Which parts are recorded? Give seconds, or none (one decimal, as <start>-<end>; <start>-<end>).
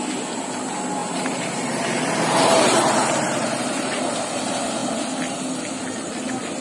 0.0-1.0; 4.3-6.6